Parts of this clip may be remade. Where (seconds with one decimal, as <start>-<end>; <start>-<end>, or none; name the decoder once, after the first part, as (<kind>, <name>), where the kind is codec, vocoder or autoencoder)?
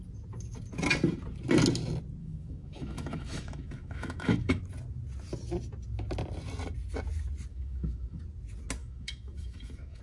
2.2-4.6 (autoencoder, DAC-VAE); 7.5-8.2; 8.8-10.0